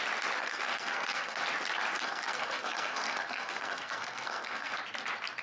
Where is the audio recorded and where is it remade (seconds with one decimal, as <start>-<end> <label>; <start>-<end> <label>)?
0.0-0.4 recorded; 0.4-1.4 remade; 1.4-1.9 recorded; 1.9-4.8 remade; 4.8-5.4 recorded